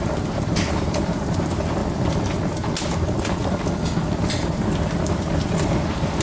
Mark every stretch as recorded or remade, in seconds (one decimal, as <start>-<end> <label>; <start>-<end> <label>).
0.0-1.8 remade; 1.8-4.2 recorded; 4.2-6.2 remade